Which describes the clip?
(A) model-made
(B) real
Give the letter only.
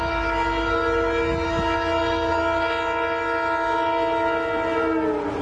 B